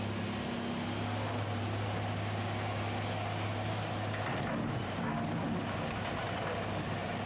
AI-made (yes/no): no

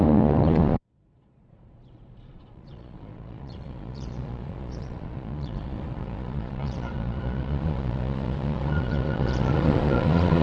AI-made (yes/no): yes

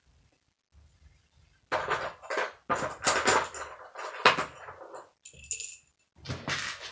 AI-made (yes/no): no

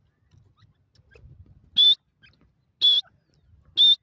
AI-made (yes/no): no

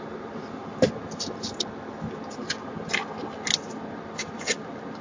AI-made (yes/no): no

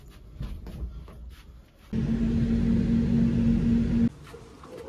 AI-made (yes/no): no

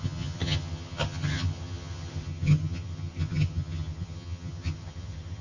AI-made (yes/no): yes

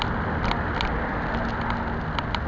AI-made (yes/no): no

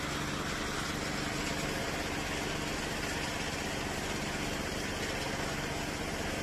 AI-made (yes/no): no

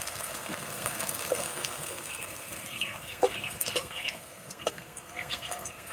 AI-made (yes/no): yes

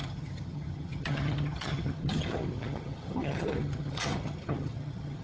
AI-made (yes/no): yes